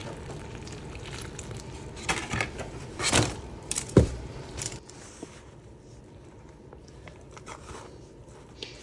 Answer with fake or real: fake